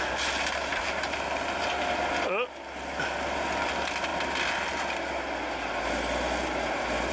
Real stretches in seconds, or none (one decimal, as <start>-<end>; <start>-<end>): 0.0-7.1